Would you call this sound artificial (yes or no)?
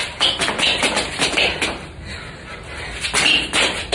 no